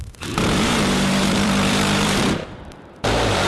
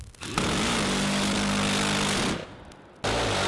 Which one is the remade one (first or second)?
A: first